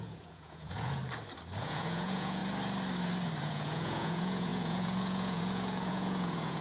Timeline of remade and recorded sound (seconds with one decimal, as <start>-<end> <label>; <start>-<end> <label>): 0.0-1.0 remade; 1.0-1.6 recorded; 1.6-2.4 remade; 2.4-3.4 recorded; 3.4-6.6 remade